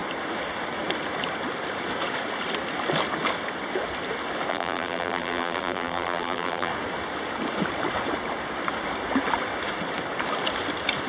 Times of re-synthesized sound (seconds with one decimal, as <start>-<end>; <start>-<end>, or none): 4.5-6.7